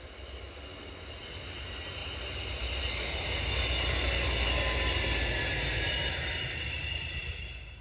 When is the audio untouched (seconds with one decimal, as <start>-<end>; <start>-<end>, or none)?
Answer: 0.0-7.2